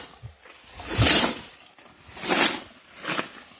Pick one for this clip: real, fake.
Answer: real